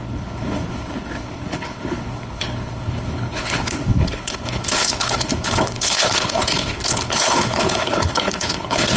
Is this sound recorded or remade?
remade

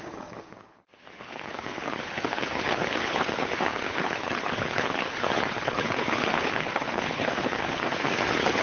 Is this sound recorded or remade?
remade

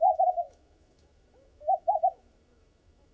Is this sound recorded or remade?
remade